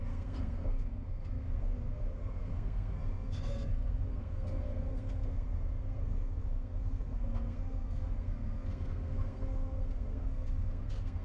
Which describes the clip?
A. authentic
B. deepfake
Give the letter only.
B